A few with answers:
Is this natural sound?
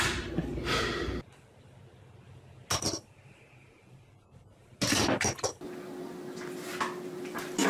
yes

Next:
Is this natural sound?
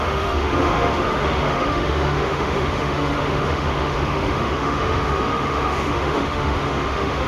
no